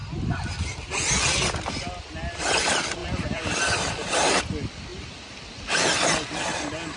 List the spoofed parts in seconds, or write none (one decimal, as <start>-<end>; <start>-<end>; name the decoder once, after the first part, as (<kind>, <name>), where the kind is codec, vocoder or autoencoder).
3.0-4.4 (vocoder, BigVGAN v2)